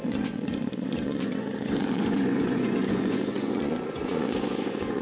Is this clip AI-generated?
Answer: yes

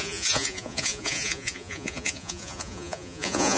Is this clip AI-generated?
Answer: yes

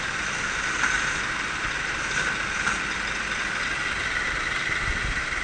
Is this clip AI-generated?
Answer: no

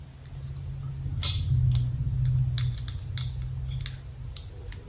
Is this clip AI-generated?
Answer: no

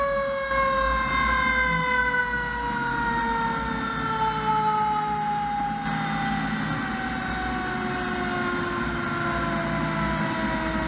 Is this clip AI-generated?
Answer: no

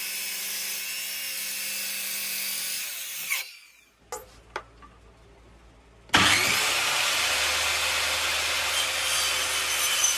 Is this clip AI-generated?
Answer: no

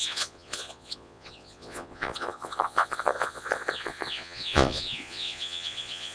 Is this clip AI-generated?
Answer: yes